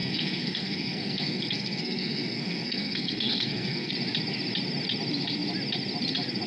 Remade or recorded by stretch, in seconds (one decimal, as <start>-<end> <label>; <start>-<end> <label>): 0.0-3.9 remade; 3.9-6.5 recorded